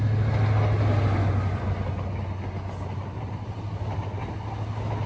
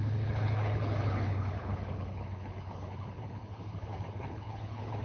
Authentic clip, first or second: first